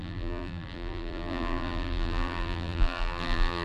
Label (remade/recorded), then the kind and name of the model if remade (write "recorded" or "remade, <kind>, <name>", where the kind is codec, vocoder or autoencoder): remade, vocoder, BigVGAN v2